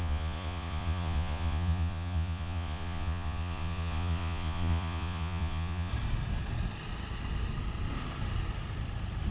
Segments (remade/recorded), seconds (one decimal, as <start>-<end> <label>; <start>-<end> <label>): 0.0-5.9 remade; 5.9-9.3 recorded